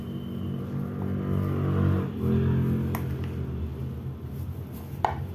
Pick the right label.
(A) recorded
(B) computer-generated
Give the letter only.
A